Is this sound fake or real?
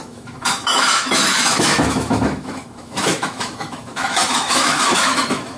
fake